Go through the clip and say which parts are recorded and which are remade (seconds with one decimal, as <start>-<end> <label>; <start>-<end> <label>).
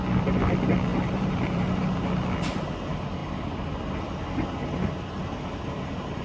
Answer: 0.0-0.9 recorded; 0.9-2.1 remade; 2.1-6.2 recorded